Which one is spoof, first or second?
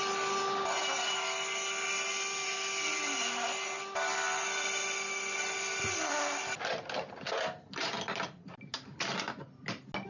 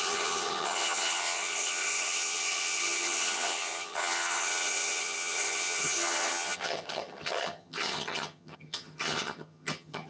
second